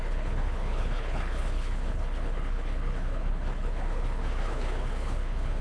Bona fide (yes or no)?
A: no